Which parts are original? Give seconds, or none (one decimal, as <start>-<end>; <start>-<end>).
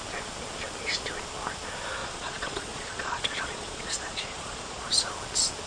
0.0-2.0; 4.9-5.7